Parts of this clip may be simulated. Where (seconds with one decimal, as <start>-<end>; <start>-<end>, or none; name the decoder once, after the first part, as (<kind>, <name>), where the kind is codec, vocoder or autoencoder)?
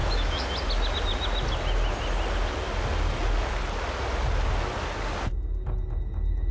0.0-0.5 (autoencoder, DAC-VAE)